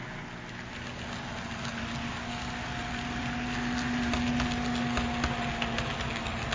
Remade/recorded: recorded